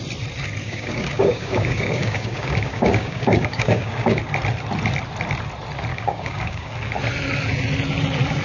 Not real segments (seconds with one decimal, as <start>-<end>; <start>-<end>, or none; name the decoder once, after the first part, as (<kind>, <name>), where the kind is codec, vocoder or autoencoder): 0.6-4.2 (codec, DAC); 5.9-6.7